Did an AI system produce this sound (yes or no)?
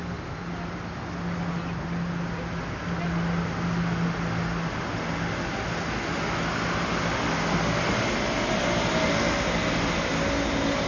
no